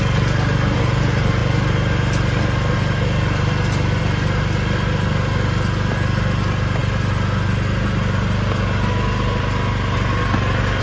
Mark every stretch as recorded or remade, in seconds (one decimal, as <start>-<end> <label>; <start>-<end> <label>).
0.0-10.8 recorded